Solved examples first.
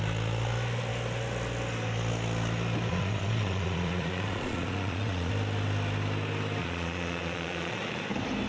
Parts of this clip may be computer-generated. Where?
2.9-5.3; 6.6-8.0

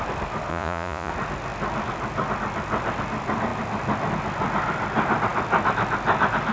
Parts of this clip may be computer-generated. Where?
0.5-1.1

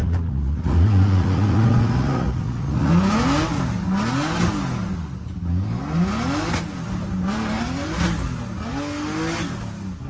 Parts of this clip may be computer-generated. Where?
0.0-2.9